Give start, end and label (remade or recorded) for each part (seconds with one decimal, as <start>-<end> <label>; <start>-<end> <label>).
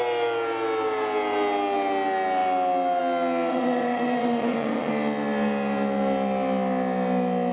0.0-3.5 recorded; 3.5-4.9 remade; 4.9-7.5 recorded